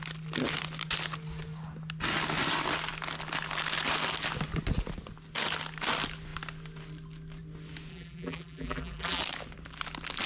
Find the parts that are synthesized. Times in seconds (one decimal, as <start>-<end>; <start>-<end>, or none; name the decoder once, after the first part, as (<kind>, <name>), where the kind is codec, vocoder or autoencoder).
7.9-9.2 (vocoder, BigVGAN v2)